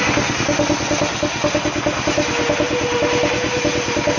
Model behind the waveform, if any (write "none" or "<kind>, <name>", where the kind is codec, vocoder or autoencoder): none